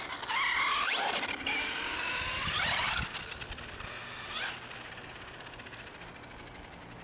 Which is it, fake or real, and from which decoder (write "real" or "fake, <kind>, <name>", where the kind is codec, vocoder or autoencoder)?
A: real